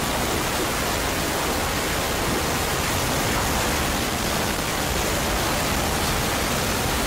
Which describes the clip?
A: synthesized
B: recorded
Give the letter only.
B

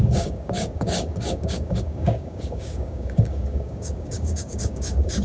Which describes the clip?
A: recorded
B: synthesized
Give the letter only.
B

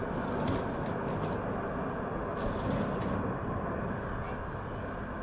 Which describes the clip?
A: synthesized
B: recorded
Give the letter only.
B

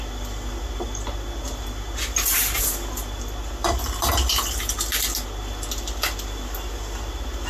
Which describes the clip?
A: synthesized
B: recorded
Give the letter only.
B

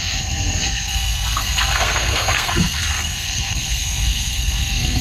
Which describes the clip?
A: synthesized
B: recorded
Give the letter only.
A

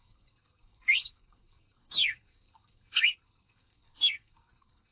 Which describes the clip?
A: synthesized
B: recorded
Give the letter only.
A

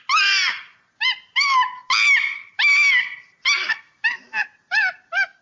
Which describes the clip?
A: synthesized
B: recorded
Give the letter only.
B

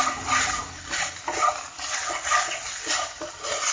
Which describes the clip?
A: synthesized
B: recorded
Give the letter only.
B